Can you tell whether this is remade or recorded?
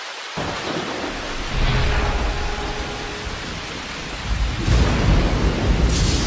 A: recorded